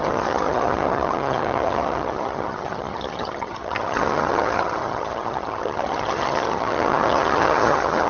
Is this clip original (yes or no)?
no